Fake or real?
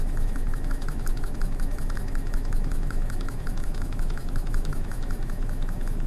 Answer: fake